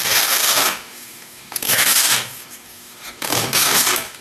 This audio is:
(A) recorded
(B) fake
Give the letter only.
B